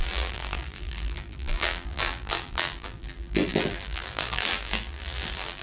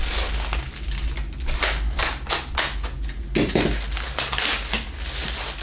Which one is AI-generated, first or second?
first